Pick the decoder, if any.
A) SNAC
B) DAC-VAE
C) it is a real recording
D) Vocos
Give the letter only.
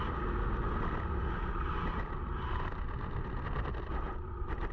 C